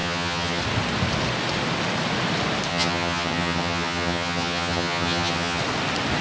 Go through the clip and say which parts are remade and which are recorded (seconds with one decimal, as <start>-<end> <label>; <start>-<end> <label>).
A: 0.0-0.6 remade; 0.6-2.7 recorded; 2.7-5.6 remade; 5.6-6.2 recorded